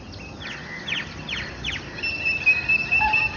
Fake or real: real